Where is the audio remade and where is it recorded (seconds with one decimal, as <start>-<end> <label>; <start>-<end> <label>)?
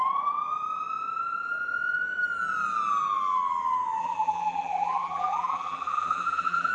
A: 0.0-4.0 recorded; 4.0-6.7 remade